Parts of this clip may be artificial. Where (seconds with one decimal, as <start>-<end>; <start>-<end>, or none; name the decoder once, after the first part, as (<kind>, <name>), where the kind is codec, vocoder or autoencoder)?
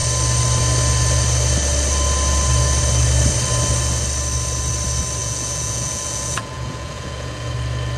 5.2-7.5 (vocoder, Vocos)